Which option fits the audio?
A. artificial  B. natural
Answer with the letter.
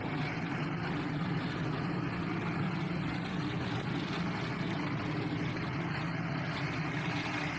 B